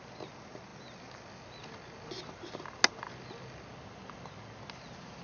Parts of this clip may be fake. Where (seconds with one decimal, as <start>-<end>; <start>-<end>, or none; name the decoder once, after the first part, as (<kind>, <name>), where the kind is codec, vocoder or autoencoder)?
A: none